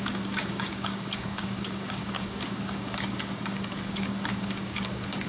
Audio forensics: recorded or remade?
remade